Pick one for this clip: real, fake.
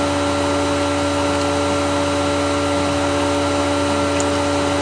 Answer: real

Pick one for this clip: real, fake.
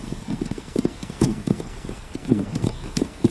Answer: fake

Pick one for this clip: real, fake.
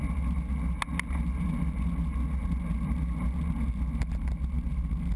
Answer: real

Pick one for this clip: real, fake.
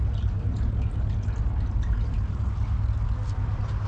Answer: real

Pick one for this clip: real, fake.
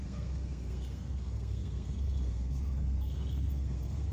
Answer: fake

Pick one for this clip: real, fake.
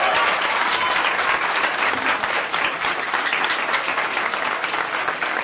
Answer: real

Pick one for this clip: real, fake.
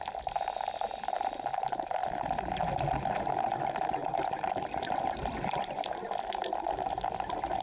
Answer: real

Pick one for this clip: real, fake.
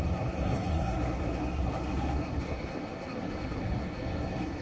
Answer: fake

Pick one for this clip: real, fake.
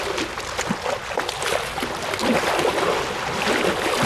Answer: real